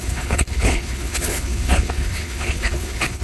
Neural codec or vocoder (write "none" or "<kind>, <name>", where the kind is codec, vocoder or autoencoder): codec, HILCodec